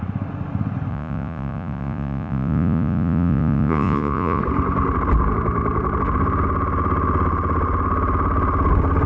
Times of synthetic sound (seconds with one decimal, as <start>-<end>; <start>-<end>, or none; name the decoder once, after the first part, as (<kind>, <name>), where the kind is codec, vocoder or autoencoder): 0.9-4.4 (vocoder, Vocos)